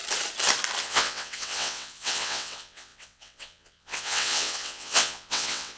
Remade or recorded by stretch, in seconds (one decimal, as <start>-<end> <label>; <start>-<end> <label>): 0.0-0.8 recorded; 0.8-5.8 remade